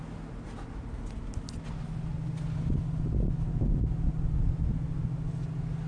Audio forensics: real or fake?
real